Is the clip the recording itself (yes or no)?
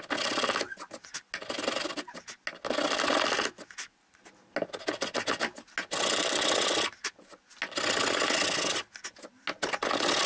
yes